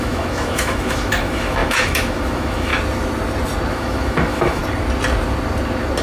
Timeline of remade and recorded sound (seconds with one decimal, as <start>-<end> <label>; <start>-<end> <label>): 0.0-2.7 remade; 2.7-3.7 recorded; 3.7-4.6 remade; 4.6-6.0 recorded